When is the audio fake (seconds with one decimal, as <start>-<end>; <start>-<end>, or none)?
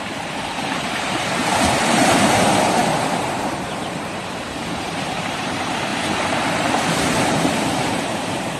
0.0-5.9; 6.5-8.6